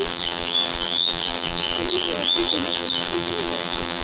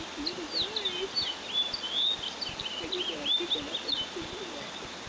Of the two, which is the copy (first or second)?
first